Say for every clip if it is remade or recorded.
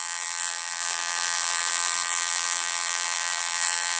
remade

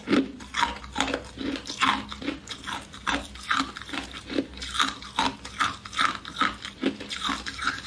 recorded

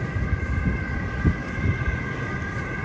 recorded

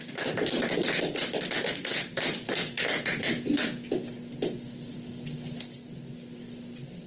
recorded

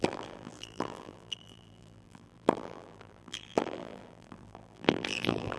remade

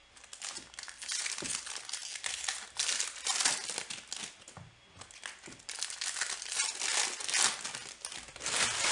recorded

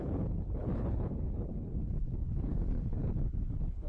remade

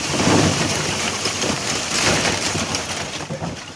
remade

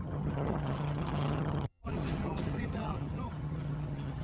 remade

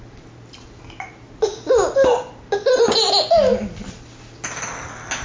recorded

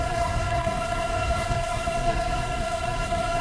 remade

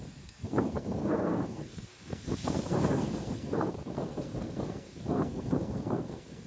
remade